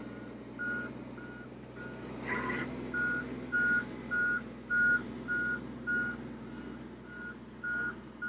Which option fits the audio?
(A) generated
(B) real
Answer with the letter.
B